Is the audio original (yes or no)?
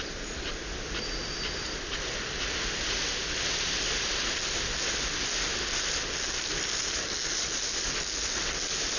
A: yes